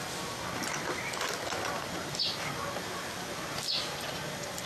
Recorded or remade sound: recorded